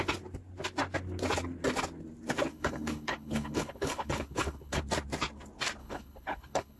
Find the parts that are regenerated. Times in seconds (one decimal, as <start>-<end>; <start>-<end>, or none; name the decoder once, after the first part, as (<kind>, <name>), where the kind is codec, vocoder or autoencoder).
2.5-4.8 (codec, HILCodec); 5.8-6.8